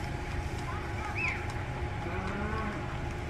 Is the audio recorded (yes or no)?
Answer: yes